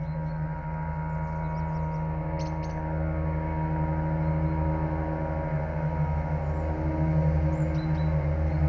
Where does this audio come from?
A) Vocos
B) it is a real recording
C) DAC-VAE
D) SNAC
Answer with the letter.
B